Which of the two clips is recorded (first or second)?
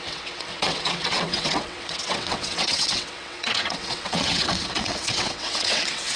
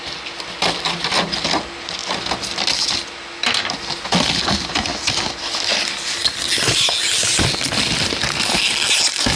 second